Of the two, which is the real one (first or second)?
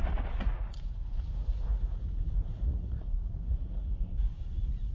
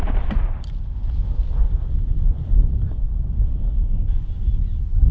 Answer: second